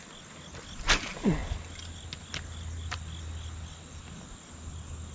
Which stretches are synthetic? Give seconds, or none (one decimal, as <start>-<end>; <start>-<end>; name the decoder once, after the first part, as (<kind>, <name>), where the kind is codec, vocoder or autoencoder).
none